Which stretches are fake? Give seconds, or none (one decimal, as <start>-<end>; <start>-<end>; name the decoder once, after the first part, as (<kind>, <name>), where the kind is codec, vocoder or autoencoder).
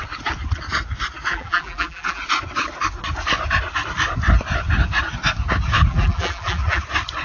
1.3-2.2 (vocoder, BigVGAN v2); 5.9-6.8